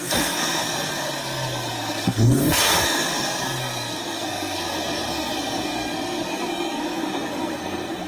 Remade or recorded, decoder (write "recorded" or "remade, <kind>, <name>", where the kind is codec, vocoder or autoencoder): remade, codec, SNAC